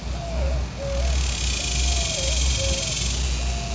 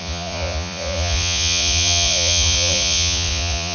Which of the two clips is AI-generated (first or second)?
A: second